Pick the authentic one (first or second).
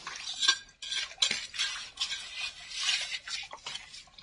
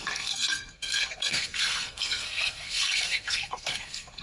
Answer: first